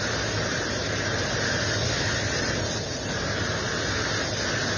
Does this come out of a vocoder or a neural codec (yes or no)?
no